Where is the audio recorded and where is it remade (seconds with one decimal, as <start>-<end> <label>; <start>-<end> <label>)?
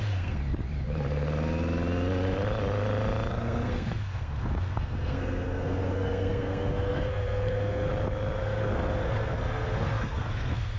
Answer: 0.0-0.4 remade; 0.4-3.3 recorded; 3.3-7.9 remade; 7.9-8.4 recorded; 8.4-10.8 remade